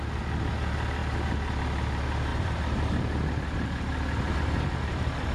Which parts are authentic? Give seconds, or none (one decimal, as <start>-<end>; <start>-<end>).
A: 0.0-2.3; 4.3-5.3